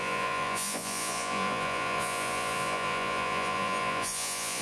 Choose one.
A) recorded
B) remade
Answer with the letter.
B